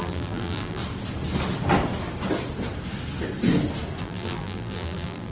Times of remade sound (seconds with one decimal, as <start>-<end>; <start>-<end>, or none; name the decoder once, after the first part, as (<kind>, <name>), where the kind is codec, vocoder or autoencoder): 0.0-0.8 (vocoder, BigVGAN v2); 4.0-5.3